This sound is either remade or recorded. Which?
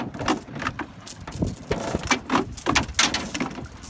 recorded